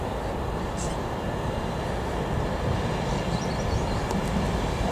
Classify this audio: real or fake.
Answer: real